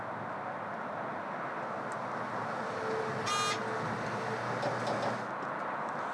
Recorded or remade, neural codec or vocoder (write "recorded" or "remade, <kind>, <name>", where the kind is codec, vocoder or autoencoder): recorded